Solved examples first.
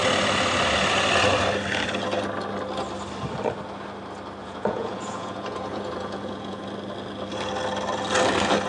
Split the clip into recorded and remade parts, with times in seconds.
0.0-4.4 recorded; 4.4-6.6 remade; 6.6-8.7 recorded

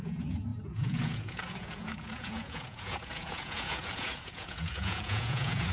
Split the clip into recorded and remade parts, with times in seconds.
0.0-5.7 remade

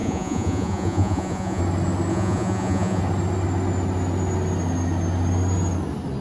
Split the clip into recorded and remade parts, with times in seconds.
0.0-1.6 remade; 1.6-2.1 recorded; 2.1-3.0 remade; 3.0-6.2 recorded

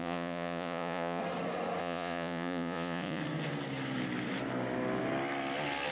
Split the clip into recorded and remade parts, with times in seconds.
0.0-1.2 remade; 1.2-1.8 recorded; 1.8-3.2 remade; 3.2-5.9 recorded

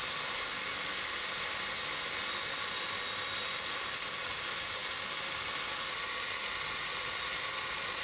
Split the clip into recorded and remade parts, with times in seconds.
0.0-8.0 recorded

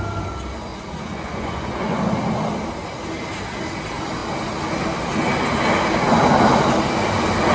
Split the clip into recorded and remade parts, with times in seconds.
0.0-0.7 recorded; 0.7-2.0 remade; 2.0-7.5 recorded

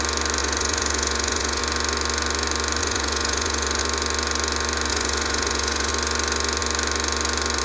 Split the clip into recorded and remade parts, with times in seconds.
0.0-0.4 recorded; 0.4-1.6 remade; 1.6-2.8 recorded; 2.8-3.8 remade; 3.8-4.9 recorded; 4.9-5.9 remade; 5.9-7.6 recorded